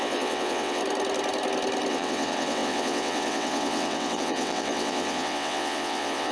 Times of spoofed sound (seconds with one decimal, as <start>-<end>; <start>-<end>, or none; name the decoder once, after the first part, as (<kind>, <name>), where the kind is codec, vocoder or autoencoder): 0.0-0.8 (vocoder, WaveNeXt); 1.9-6.3